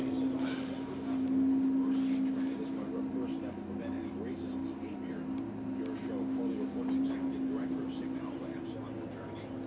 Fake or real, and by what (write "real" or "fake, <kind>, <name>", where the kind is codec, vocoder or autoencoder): real